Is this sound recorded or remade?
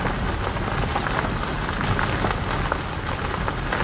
recorded